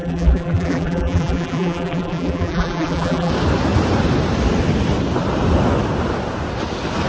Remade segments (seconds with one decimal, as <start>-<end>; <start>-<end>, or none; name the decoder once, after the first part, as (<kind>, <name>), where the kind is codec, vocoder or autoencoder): 0.0-3.3 (vocoder, BigVGAN v2)

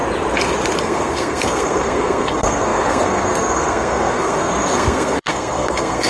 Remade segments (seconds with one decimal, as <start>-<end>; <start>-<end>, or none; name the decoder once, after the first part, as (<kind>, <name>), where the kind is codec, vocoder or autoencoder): 0.8-6.1 (codec, SNAC)

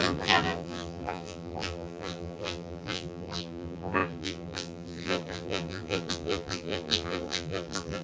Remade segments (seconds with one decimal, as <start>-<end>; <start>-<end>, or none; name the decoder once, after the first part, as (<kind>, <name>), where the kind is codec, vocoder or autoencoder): 0.0-8.0 (vocoder, BigVGAN v2)

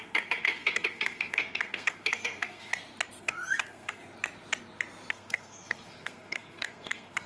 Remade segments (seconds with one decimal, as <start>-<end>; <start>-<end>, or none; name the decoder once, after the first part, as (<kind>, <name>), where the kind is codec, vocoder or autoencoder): 0.0-2.7 (codec, SNAC); 3.2-4.0; 5.1-7.3